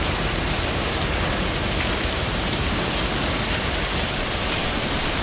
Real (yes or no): no